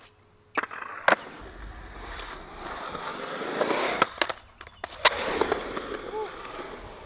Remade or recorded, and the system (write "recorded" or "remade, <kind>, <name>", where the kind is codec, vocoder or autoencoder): recorded